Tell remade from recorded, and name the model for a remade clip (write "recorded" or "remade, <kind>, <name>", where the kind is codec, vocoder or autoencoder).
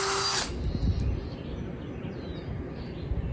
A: recorded